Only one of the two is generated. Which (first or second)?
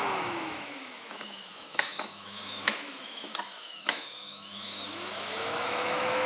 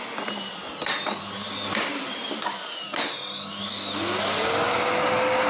first